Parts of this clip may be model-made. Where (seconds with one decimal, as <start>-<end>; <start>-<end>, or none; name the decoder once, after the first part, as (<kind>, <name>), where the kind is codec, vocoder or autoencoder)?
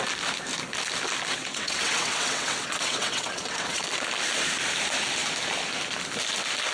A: 1.3-3.8 (vocoder, WaveNeXt)